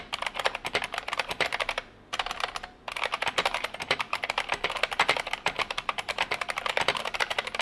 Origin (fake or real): real